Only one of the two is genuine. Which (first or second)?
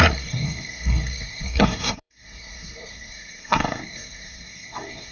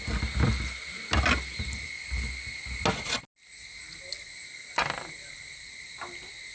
second